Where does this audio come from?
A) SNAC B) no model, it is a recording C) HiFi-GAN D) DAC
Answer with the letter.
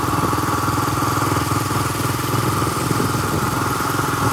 B